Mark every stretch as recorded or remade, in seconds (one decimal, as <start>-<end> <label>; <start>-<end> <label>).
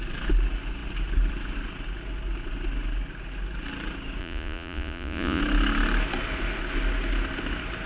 0.0-4.2 recorded; 4.2-5.4 remade; 5.4-7.9 recorded